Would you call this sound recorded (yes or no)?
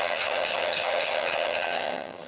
no